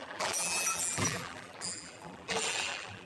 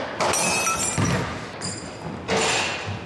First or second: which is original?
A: second